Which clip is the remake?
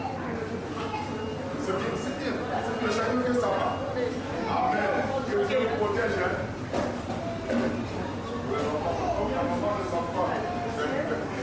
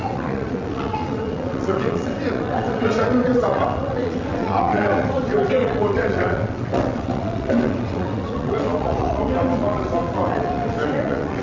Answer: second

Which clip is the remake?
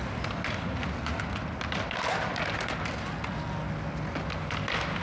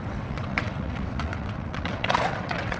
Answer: second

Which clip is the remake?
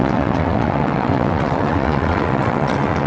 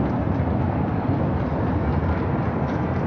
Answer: first